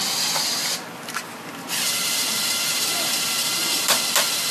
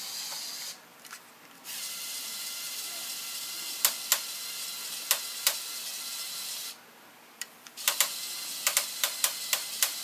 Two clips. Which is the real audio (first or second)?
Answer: second